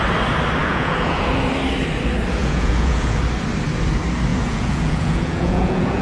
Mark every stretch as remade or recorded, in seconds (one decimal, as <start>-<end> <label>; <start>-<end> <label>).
0.0-0.6 recorded; 0.6-1.3 remade; 1.3-2.4 recorded; 2.4-3.2 remade; 3.2-4.3 recorded; 4.3-6.0 remade